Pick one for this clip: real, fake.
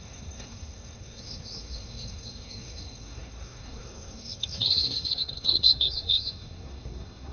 fake